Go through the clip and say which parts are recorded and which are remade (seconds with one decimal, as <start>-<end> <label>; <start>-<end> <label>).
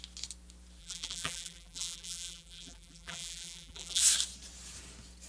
0.0-0.8 recorded; 0.8-4.0 remade; 4.0-5.3 recorded